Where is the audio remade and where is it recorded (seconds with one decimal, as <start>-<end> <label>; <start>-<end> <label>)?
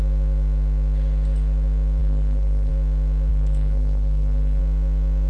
0.0-2.0 recorded; 2.0-2.7 remade; 2.7-3.3 recorded; 3.3-4.6 remade; 4.6-5.3 recorded